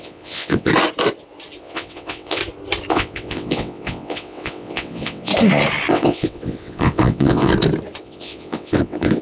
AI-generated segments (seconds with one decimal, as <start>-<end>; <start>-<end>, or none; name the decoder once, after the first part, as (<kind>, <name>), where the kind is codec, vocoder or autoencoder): 0.0-0.7 (vocoder, WaveNeXt); 1.6-2.4; 2.9-5.3; 5.9-7.5; 8.0-9.2